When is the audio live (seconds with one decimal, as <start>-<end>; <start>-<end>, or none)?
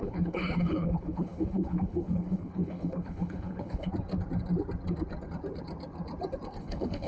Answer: 3.9-6.6